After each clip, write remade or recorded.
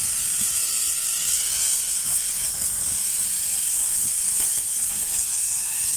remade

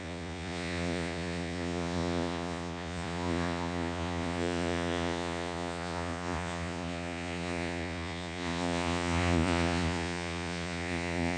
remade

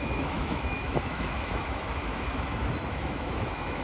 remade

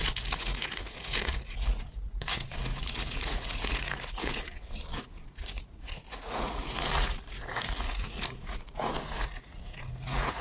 remade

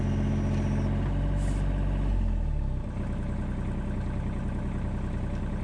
recorded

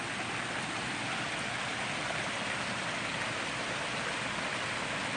recorded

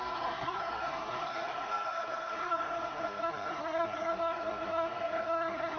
remade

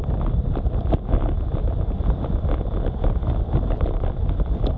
remade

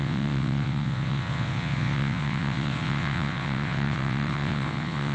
remade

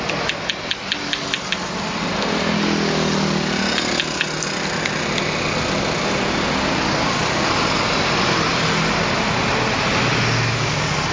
recorded